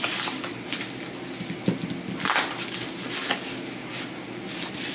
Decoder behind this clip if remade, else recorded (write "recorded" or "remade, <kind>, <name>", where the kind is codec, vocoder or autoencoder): recorded